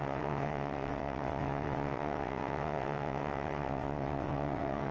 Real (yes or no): no